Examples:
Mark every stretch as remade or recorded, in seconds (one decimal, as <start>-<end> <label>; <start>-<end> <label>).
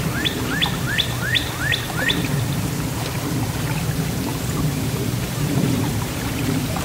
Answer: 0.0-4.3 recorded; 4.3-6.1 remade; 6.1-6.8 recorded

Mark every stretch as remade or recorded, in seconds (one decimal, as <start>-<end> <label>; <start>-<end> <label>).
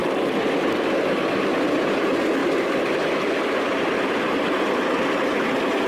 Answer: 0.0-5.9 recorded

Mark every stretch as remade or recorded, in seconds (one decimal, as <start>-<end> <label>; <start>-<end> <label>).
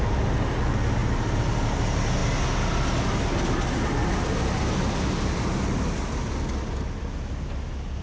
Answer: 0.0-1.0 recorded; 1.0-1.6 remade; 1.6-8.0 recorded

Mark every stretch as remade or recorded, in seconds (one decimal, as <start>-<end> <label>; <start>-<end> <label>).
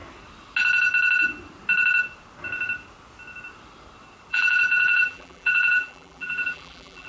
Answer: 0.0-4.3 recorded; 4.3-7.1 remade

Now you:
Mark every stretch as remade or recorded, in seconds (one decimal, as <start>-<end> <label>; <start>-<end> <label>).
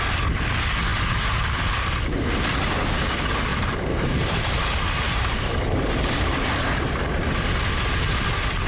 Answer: 0.0-3.5 recorded; 3.5-7.3 remade; 7.3-8.7 recorded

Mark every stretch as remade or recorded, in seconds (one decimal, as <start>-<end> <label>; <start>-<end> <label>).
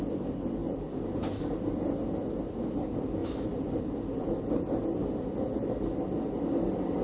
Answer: 0.0-0.6 recorded; 0.6-1.7 remade; 1.7-3.2 recorded; 3.2-4.5 remade; 4.5-7.0 recorded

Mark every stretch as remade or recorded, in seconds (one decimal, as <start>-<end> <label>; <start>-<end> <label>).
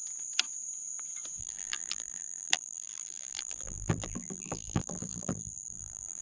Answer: 0.0-1.4 recorded; 1.4-6.2 remade